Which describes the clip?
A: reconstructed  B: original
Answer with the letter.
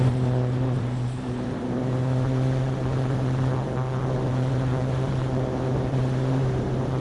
A